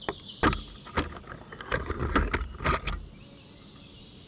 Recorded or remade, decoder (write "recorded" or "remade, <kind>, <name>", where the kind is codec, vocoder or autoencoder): recorded